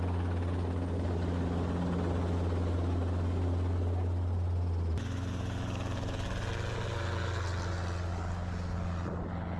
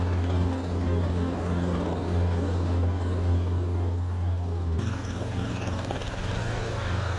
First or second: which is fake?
second